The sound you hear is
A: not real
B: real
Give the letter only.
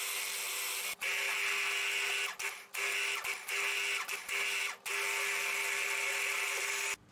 B